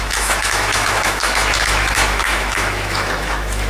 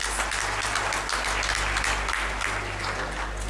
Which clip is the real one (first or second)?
second